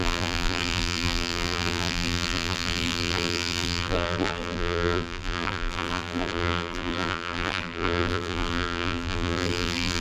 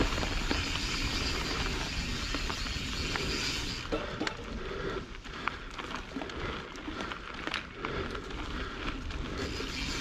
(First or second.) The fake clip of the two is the first